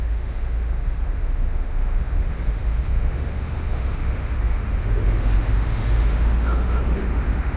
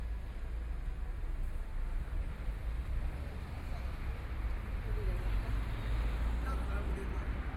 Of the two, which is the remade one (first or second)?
first